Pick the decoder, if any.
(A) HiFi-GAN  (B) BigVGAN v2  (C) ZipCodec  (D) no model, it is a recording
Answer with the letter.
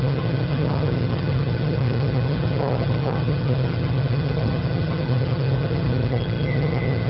A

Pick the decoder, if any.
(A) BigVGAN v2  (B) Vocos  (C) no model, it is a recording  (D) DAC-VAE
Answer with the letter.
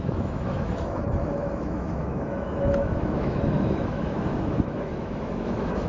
D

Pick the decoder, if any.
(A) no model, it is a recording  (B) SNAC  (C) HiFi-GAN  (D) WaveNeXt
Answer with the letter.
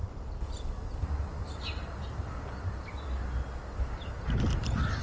A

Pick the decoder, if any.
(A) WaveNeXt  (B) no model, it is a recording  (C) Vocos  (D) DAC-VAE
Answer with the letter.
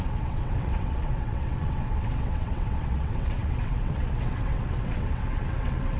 A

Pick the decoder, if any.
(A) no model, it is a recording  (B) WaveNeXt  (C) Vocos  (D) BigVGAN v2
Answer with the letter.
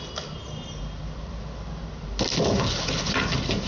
A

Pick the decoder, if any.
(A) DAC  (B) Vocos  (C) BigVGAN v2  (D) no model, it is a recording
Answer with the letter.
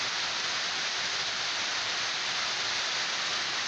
D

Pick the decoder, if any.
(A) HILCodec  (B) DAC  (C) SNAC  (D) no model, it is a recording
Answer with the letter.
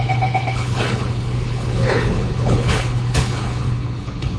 A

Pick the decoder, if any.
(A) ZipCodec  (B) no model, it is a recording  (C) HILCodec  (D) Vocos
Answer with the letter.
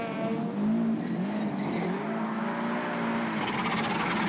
B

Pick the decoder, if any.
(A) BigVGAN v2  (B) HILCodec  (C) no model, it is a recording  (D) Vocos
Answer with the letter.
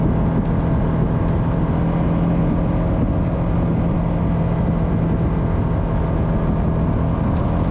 C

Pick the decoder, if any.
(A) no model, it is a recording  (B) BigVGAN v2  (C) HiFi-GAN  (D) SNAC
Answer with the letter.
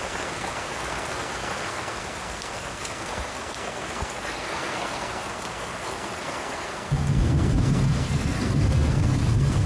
D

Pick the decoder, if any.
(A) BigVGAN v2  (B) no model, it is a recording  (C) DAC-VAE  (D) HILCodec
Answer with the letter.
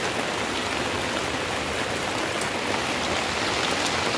B